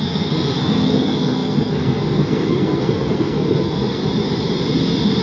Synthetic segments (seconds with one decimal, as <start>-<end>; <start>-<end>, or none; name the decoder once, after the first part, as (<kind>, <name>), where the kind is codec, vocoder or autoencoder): 0.0-4.0 (codec, SNAC)